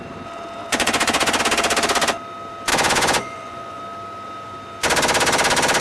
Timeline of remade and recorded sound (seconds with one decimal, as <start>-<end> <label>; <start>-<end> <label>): 0.0-0.6 recorded; 0.6-1.4 remade; 1.4-2.7 recorded; 2.7-3.8 remade; 3.8-5.8 recorded